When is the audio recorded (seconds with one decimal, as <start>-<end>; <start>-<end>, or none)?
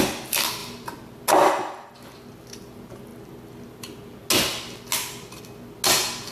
0.0-6.3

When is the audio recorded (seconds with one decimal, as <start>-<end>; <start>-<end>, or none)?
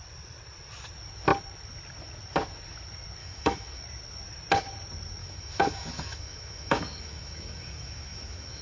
0.0-3.2; 3.8-5.2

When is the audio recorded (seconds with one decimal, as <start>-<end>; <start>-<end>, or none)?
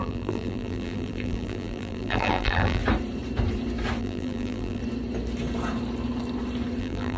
2.8-4.0; 4.8-6.8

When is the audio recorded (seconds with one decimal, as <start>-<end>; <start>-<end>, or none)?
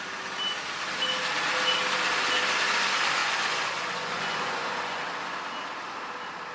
0.0-3.2; 5.0-6.5